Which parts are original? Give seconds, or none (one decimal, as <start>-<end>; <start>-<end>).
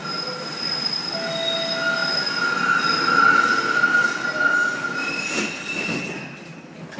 0.0-7.0